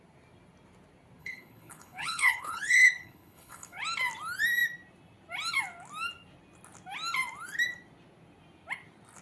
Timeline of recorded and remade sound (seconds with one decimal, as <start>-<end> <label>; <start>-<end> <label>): 0.0-1.2 recorded; 1.2-3.8 remade; 3.8-9.2 recorded